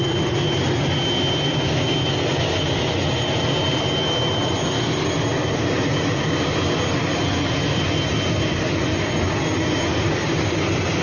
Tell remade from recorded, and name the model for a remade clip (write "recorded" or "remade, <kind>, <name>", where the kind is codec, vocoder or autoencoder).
recorded